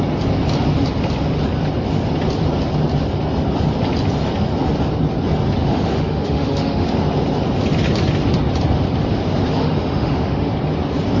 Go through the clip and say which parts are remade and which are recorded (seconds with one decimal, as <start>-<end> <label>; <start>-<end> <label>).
0.0-5.6 recorded; 5.6-6.9 remade; 6.9-9.6 recorded; 9.6-10.5 remade; 10.5-11.2 recorded